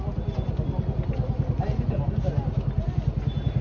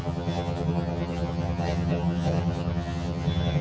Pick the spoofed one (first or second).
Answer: second